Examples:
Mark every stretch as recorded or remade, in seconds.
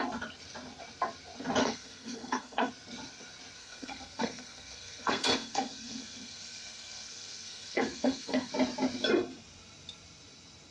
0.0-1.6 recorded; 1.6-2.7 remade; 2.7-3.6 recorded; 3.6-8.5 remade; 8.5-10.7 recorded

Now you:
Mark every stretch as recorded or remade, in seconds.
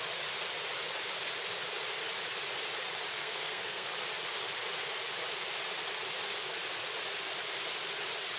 0.0-3.2 recorded; 3.2-3.9 remade; 3.9-8.4 recorded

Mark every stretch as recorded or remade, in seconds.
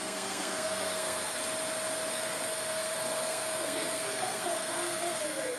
0.0-1.4 remade; 1.4-2.1 recorded; 2.1-5.6 remade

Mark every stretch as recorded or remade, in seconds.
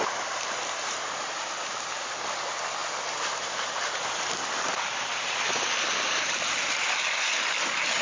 0.0-8.0 recorded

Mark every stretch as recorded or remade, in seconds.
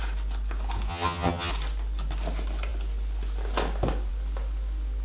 0.0-0.9 recorded; 0.9-1.5 remade; 1.5-5.0 recorded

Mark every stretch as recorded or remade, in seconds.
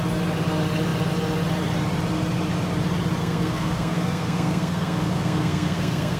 0.0-3.2 recorded; 3.2-6.2 remade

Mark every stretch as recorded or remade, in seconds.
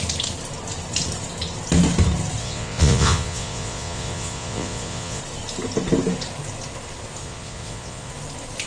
0.0-2.4 recorded; 2.4-5.2 remade; 5.2-7.2 recorded; 7.2-8.1 remade; 8.1-8.7 recorded